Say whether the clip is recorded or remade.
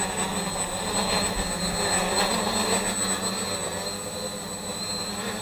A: recorded